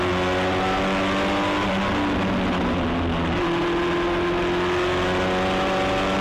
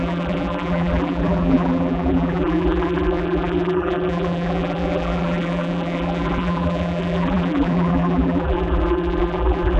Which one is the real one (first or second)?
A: first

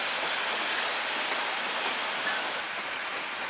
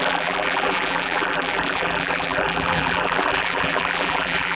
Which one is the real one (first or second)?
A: first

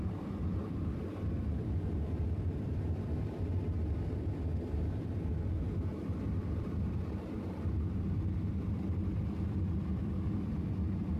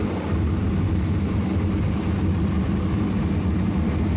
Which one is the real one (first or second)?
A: second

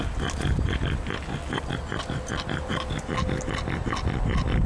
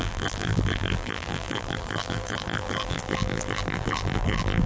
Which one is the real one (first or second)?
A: first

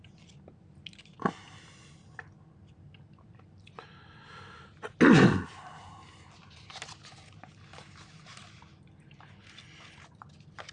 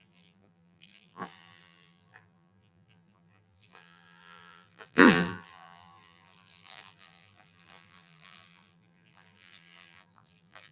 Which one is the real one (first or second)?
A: first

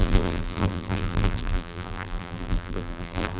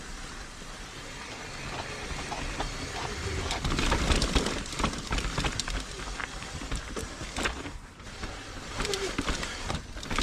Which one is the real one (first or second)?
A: second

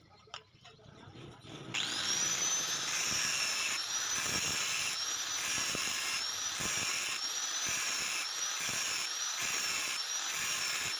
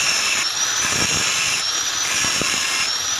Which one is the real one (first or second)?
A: first